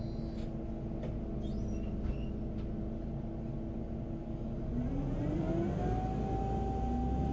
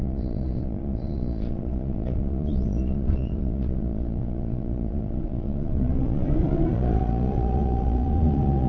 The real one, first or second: first